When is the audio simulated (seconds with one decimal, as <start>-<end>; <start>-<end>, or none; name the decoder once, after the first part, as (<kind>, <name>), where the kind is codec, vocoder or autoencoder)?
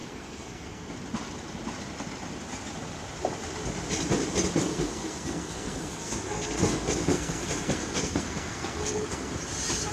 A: 0.0-0.9 (codec, SNAC); 4.7-9.3